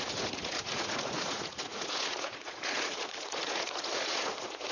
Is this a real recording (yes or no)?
no